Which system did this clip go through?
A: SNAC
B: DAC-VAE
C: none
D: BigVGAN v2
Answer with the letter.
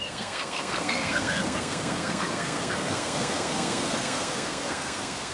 A